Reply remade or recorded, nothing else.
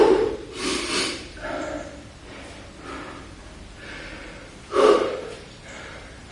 remade